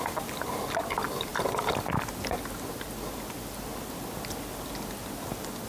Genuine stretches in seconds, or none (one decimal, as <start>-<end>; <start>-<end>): 0.0-5.7

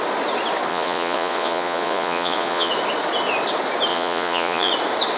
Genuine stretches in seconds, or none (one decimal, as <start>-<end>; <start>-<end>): 0.0-0.7; 2.7-3.9; 4.7-5.2

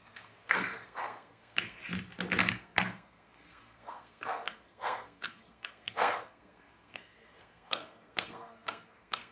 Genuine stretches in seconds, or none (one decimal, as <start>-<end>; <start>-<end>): 1.8-2.5

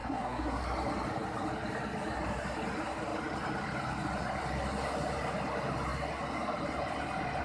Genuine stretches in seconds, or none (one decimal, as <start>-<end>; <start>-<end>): 0.6-7.4

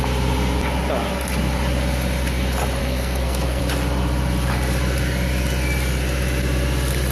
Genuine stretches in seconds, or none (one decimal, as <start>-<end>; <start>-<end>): 0.0-2.8; 3.6-7.1

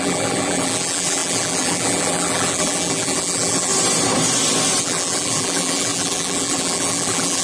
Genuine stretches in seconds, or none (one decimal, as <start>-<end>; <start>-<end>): 3.7-4.8

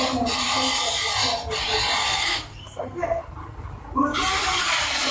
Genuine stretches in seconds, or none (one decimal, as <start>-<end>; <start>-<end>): 0.0-2.0; 3.2-5.1

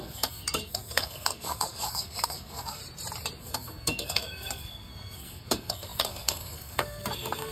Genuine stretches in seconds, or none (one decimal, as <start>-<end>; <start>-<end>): 2.8-3.4